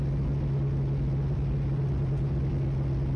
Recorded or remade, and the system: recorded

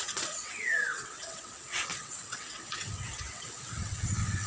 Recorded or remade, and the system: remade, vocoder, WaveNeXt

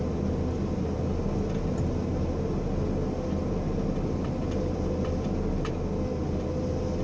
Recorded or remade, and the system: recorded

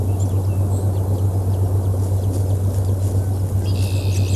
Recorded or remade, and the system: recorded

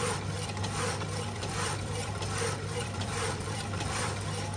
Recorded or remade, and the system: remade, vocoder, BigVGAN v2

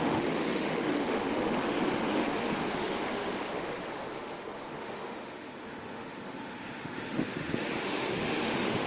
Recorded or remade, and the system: remade, autoencoder, DAC-VAE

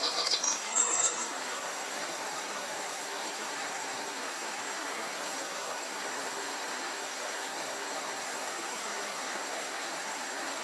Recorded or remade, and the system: remade, codec, SNAC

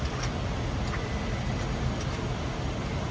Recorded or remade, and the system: recorded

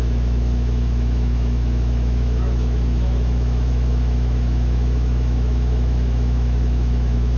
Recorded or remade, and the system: remade, autoencoder, DAC-VAE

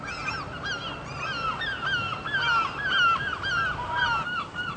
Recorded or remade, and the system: recorded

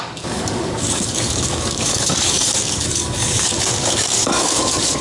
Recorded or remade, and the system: remade, codec, DAC